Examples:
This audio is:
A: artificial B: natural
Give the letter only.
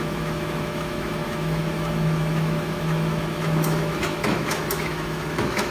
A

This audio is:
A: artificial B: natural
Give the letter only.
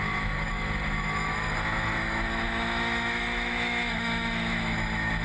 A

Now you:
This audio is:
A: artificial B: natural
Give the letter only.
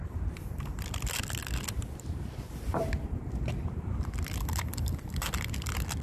B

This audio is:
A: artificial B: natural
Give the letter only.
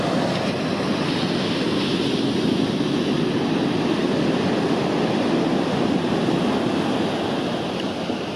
B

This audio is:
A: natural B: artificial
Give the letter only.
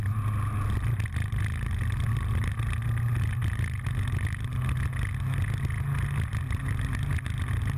A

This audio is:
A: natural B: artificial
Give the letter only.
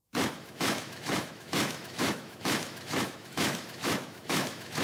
B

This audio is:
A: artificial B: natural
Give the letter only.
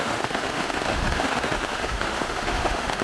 A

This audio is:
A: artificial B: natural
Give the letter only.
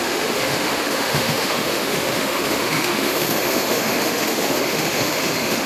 A